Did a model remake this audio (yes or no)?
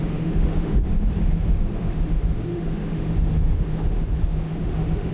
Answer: yes